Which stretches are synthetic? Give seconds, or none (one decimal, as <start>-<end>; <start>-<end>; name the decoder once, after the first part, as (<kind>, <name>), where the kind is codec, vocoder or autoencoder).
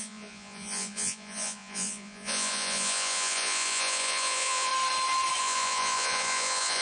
0.0-4.7 (vocoder, Vocos); 5.4-6.8